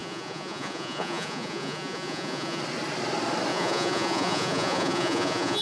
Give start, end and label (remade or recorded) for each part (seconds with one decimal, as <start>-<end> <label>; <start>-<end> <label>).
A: 0.0-2.6 remade; 2.6-3.5 recorded; 3.5-5.6 remade